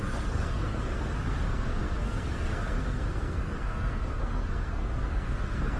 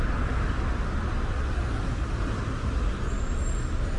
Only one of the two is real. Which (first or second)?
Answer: second